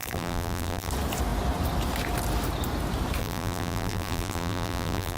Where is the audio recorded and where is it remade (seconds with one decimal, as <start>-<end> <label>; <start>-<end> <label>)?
0.0-0.9 remade; 0.9-3.2 recorded; 3.2-5.2 remade